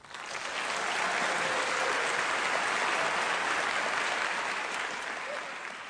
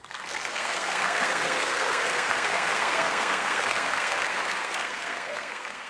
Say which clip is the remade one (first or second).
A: second